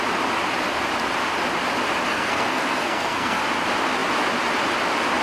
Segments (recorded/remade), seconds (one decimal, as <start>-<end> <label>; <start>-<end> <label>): 0.0-2.1 recorded; 2.1-3.4 remade; 3.4-5.2 recorded